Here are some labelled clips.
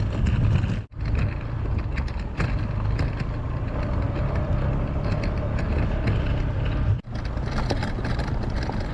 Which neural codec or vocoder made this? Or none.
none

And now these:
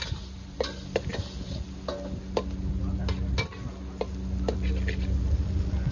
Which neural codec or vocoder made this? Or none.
none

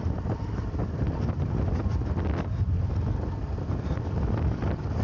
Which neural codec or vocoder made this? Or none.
none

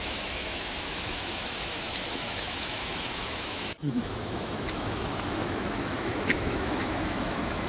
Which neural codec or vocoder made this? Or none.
autoencoder, DAC-VAE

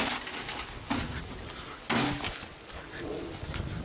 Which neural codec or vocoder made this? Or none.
none